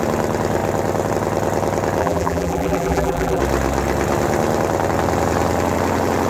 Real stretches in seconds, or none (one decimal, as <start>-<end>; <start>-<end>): 0.0-2.0; 3.4-6.3